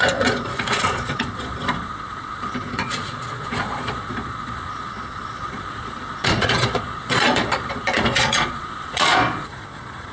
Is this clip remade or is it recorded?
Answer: remade